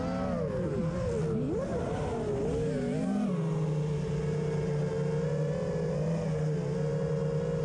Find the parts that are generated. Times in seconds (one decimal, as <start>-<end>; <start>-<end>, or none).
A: none